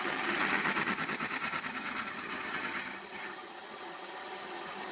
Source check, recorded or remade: remade